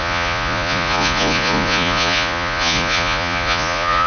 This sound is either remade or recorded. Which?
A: remade